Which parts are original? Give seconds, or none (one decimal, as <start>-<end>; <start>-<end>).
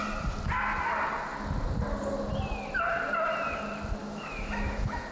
0.0-4.0